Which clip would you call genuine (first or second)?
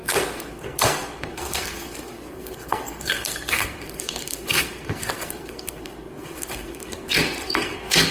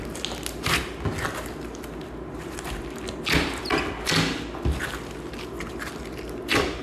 second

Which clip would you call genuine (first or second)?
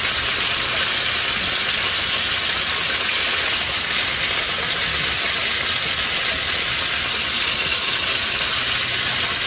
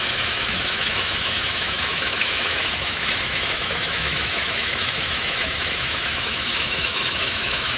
first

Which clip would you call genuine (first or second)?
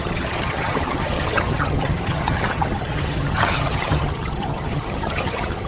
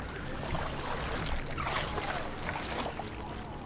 second